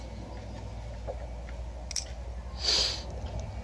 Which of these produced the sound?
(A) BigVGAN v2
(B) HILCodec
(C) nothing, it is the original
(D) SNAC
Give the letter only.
C